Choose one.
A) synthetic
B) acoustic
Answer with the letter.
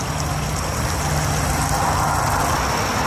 B